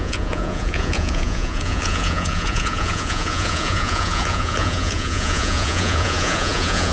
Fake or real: fake